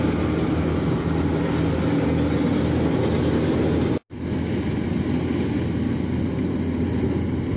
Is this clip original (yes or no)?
yes